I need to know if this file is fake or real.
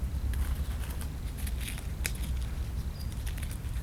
real